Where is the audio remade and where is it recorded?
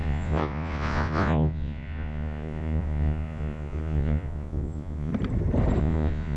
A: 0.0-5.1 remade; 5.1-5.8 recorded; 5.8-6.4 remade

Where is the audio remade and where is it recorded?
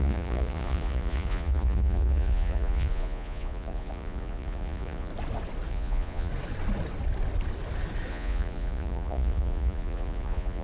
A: 0.0-5.1 remade; 5.1-5.7 recorded; 5.7-6.3 remade; 6.3-8.1 recorded; 8.1-10.6 remade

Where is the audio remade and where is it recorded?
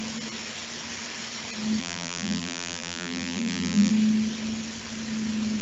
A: 0.0-1.8 recorded; 1.8-3.9 remade; 3.9-5.6 recorded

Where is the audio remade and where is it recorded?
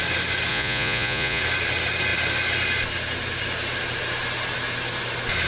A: 0.0-0.5 recorded; 0.5-1.4 remade; 1.4-5.5 recorded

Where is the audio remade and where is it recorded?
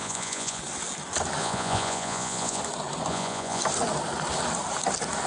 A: 0.0-0.6 remade; 0.6-1.4 recorded; 1.4-2.6 remade; 2.6-3.1 recorded; 3.1-3.6 remade; 3.6-5.3 recorded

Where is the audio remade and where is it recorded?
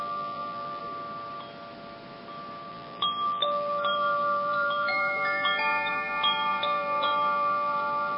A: 0.0-0.8 remade; 0.8-2.7 recorded; 2.7-8.2 remade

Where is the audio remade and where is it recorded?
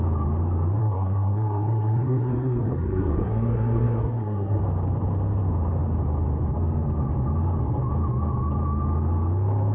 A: 0.0-0.8 recorded; 0.8-4.6 remade; 4.6-9.7 recorded